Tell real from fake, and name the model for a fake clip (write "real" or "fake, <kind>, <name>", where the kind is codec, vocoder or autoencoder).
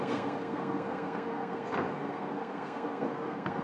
fake, codec, SNAC